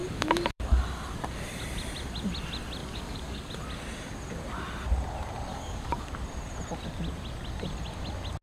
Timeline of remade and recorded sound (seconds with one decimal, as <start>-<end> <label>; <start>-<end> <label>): 0.0-0.8 remade; 0.8-2.8 recorded; 2.8-3.5 remade; 3.5-5.5 recorded; 5.5-6.1 remade; 6.1-8.4 recorded

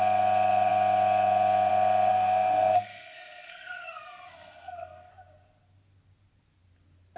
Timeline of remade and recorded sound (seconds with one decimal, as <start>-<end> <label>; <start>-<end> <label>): 0.0-2.1 recorded; 2.1-5.1 remade; 5.1-7.2 recorded

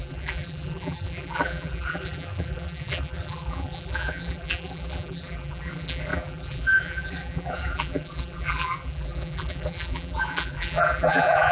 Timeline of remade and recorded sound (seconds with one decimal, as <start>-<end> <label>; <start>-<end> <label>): 0.0-11.5 remade

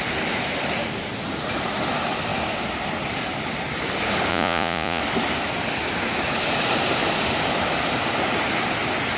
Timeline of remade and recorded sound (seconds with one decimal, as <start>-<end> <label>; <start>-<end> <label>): 0.0-4.3 recorded; 4.3-5.0 remade; 5.0-9.2 recorded

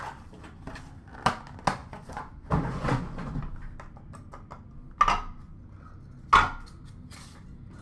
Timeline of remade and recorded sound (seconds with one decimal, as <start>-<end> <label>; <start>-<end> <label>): 0.0-1.8 recorded; 1.8-3.4 remade; 3.4-7.8 recorded